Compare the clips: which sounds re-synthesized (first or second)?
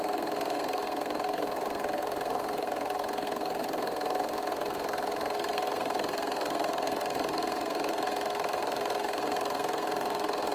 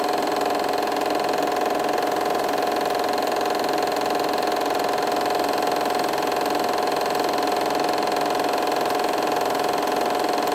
first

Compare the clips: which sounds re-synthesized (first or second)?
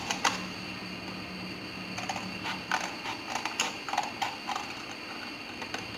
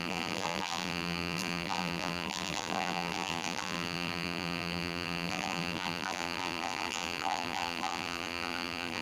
second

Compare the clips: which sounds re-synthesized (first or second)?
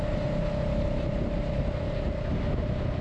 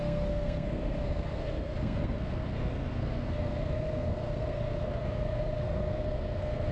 second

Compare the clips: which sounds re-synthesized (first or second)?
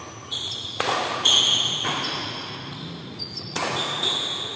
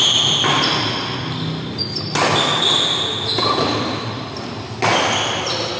first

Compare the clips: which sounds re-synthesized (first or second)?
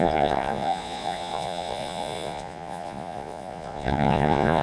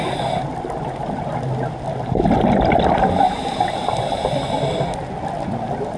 first